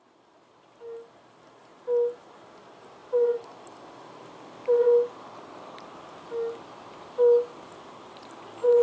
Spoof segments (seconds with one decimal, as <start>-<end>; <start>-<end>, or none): none